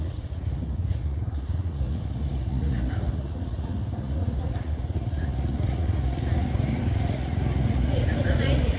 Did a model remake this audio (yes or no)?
yes